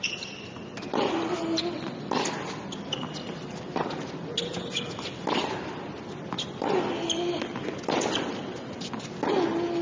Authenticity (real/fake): real